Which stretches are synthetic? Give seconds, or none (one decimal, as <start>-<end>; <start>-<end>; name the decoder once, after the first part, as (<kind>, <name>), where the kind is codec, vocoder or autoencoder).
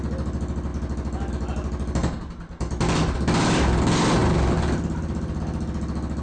2.0-3.0 (vocoder, BigVGAN v2); 4.2-5.4